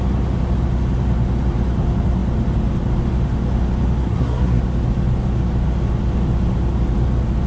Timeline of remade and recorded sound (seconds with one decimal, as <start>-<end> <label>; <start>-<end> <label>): 0.0-4.0 recorded; 4.0-4.6 remade; 4.6-7.5 recorded